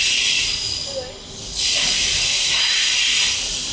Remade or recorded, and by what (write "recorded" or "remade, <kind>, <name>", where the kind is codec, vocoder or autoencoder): recorded